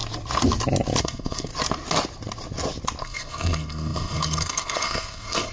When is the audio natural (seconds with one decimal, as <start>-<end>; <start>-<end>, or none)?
0.0-1.0; 1.5-3.0